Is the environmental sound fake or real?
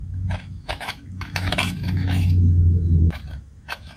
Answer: fake